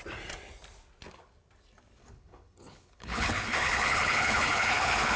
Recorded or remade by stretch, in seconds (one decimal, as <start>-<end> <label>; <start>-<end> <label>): 0.0-2.0 recorded; 2.0-5.2 remade